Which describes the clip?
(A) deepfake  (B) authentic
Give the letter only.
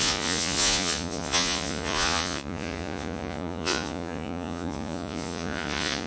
A